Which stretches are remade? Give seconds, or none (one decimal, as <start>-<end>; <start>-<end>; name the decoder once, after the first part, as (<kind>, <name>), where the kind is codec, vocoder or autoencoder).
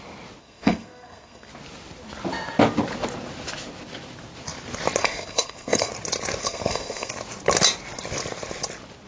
0.4-1.5 (codec, SNAC); 5.0-5.9; 6.4-7.1